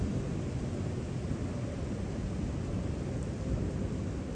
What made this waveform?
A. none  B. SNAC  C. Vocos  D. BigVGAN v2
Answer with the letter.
A